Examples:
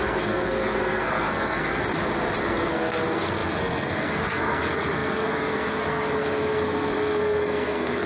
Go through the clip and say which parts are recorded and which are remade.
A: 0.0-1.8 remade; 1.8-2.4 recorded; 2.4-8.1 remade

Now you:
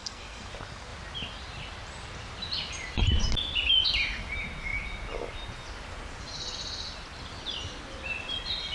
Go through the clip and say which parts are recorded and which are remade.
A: 0.0-0.5 remade; 0.5-8.7 recorded

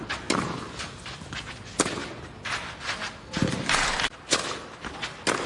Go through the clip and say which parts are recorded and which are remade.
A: 0.0-5.5 recorded